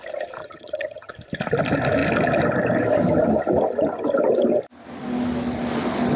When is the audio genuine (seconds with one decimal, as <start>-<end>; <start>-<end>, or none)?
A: 0.0-0.4; 1.1-6.2